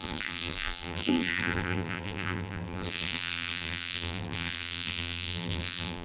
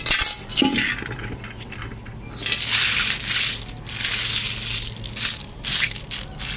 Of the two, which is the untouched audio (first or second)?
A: second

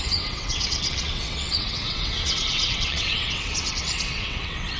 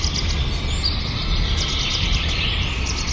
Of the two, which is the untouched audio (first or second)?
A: second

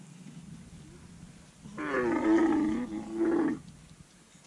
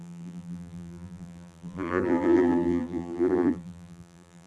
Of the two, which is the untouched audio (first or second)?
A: first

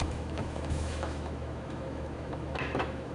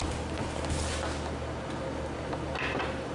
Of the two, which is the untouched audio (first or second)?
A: second